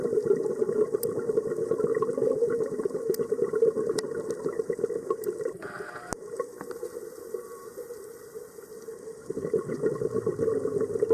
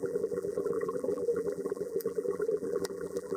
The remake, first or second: second